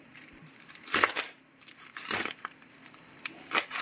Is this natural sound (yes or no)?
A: no